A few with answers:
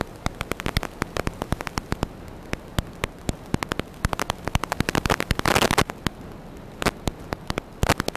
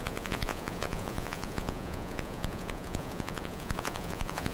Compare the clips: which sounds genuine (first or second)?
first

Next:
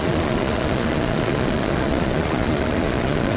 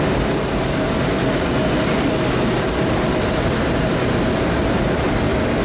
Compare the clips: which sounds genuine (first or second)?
second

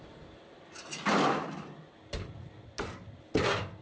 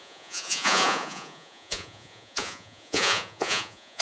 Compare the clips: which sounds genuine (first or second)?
first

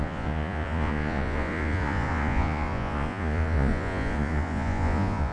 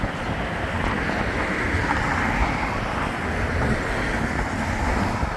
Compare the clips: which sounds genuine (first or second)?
second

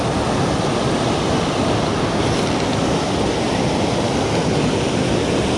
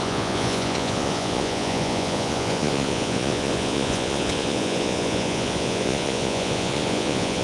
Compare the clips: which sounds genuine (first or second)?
first